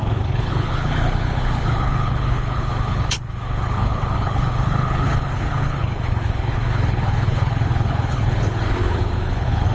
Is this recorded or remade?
remade